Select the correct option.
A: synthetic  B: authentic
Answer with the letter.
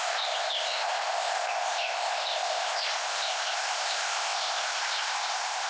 A